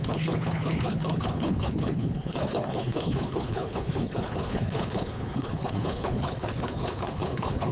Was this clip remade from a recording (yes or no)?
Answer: yes